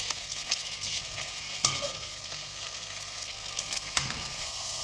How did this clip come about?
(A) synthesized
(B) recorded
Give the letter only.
A